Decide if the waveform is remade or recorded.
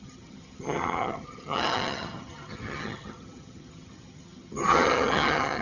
remade